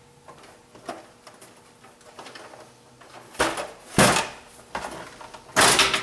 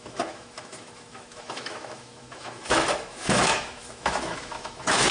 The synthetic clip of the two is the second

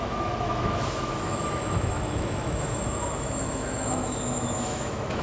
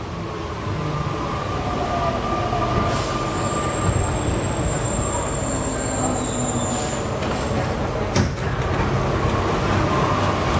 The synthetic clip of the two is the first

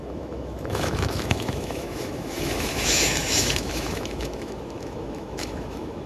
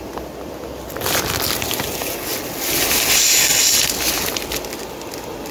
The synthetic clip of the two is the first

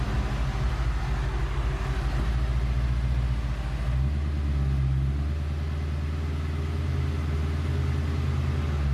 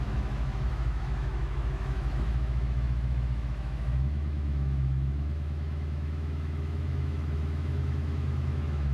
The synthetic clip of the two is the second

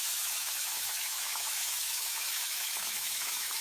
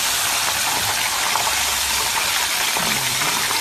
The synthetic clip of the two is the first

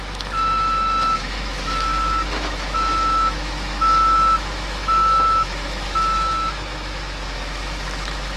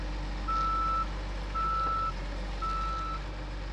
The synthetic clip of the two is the first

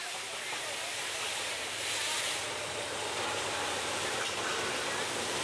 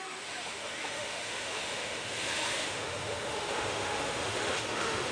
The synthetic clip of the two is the second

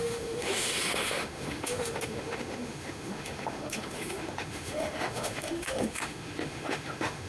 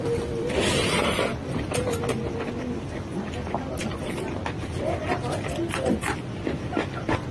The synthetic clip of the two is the first